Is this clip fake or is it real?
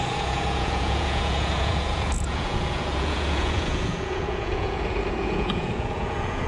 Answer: fake